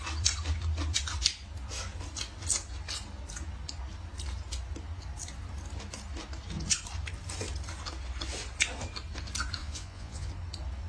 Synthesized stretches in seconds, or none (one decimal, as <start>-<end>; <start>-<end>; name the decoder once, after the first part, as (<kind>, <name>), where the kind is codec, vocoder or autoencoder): 9.6-10.3 (vocoder, Vocos)